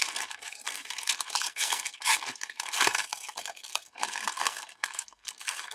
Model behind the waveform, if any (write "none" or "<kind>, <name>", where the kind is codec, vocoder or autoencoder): codec, SNAC